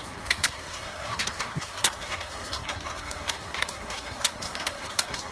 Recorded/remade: remade